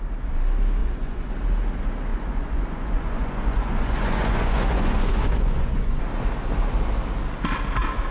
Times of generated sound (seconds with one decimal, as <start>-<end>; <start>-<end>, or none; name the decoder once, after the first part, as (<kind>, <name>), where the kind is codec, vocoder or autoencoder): 0.8-1.3 (vocoder, Vocos); 2.1-6.0